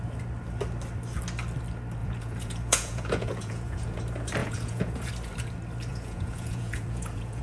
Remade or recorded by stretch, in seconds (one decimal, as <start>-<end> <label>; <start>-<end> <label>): 0.0-2.0 recorded; 2.0-4.0 remade; 4.0-4.4 recorded; 4.4-5.1 remade; 5.1-5.9 recorded; 5.9-7.4 remade